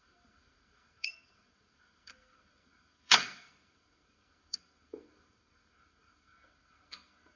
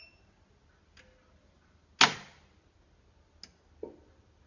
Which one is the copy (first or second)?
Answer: first